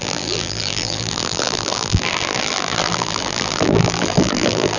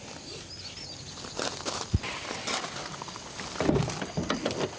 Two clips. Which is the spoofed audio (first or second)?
first